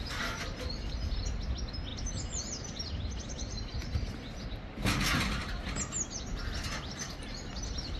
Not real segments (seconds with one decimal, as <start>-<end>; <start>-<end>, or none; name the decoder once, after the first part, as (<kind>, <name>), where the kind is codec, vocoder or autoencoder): none